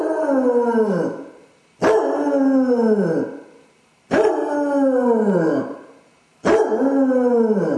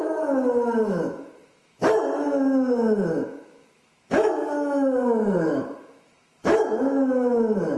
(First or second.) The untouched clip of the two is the first